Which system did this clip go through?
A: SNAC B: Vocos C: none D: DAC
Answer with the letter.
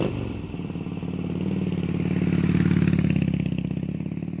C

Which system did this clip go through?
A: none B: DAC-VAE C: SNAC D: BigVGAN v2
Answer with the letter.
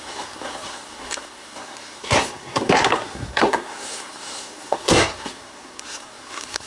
C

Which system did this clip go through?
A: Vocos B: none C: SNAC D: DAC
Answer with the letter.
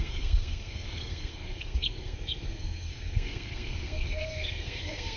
C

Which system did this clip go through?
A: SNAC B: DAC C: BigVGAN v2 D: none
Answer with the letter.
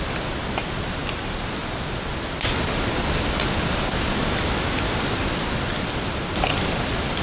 D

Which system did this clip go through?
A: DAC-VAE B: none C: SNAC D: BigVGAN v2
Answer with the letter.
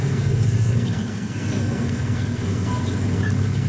C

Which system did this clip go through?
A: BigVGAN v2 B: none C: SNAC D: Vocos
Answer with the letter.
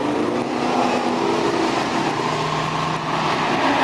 B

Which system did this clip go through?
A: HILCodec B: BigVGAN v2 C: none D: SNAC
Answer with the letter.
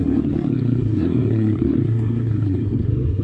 D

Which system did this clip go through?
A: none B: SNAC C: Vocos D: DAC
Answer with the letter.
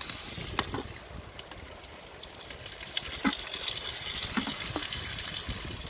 A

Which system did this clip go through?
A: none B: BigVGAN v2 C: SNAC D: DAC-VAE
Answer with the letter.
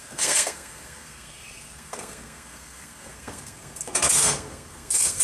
C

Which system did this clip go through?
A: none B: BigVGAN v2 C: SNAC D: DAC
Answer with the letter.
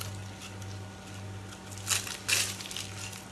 A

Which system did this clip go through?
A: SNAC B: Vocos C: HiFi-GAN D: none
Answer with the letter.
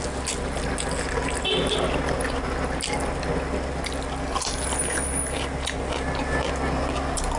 D